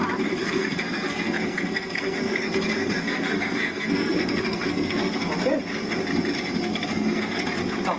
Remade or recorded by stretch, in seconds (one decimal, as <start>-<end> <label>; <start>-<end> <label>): 0.0-0.4 recorded; 0.4-5.2 remade; 5.2-6.7 recorded; 6.7-7.4 remade; 7.4-8.0 recorded